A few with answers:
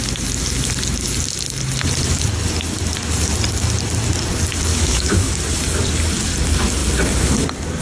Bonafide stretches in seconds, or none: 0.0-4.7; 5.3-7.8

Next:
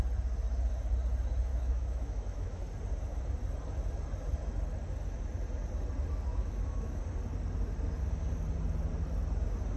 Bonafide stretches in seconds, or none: 0.0-1.5; 2.6-6.3; 7.0-9.8

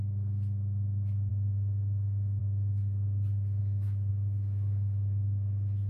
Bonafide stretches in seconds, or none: 0.0-1.3; 2.4-3.6; 4.1-5.9

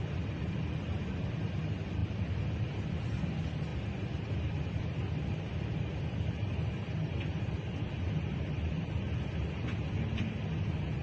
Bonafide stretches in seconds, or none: 0.0-11.0